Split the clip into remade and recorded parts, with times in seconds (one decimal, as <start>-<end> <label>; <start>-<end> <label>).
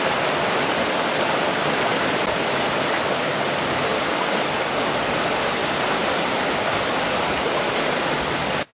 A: 0.0-8.7 recorded